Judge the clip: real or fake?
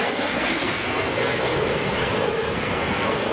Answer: fake